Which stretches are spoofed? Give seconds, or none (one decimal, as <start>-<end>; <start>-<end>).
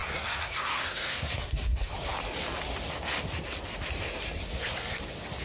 0.0-1.9; 4.5-5.0